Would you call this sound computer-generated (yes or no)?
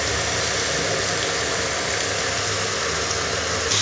no